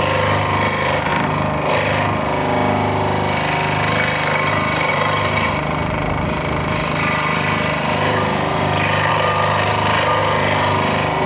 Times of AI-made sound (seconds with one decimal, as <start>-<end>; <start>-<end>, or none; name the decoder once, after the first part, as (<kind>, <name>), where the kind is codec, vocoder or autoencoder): 0.0-1.1 (vocoder, BigVGAN v2); 4.5-11.3